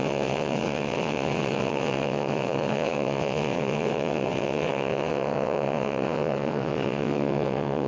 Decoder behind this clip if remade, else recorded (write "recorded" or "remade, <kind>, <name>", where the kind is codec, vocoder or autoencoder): remade, vocoder, WaveNeXt